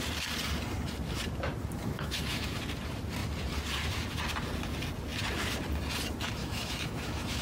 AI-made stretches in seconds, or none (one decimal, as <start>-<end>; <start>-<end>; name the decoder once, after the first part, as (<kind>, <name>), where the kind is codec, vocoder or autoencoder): 1.8-2.6 (autoencoder, DAC-VAE); 6.4-7.4